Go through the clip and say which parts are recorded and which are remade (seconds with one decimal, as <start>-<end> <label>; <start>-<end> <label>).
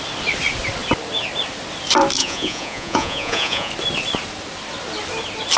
0.0-2.2 recorded; 2.2-3.7 remade; 3.7-5.6 recorded